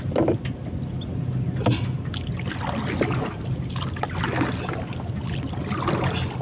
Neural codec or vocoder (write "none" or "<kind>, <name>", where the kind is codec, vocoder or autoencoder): none